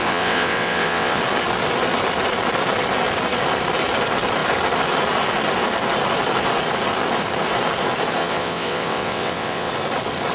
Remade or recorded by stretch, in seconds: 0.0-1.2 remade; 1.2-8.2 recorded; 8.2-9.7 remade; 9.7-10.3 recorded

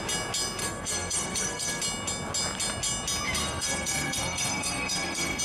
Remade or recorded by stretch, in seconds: 0.0-0.6 recorded; 0.6-1.8 remade; 1.8-3.4 recorded; 3.4-5.4 remade

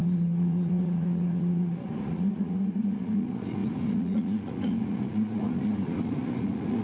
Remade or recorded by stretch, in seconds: 0.0-6.8 remade

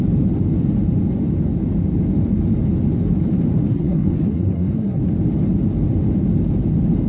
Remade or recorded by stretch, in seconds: 0.0-3.7 recorded; 3.7-5.0 remade; 5.0-7.1 recorded

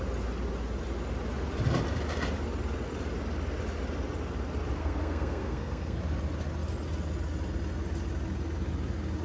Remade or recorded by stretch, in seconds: 0.0-4.8 recorded; 4.8-6.0 remade; 6.0-9.2 recorded

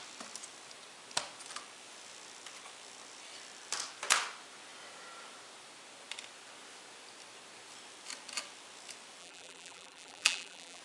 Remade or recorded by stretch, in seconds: 0.0-9.2 recorded; 9.2-10.8 remade

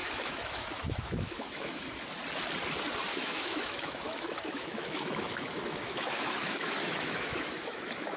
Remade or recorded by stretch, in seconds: 0.0-1.9 remade; 1.9-3.1 recorded; 3.1-8.2 remade

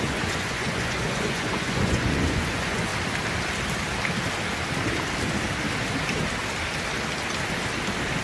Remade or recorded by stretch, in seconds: 0.0-2.9 remade; 2.9-8.2 recorded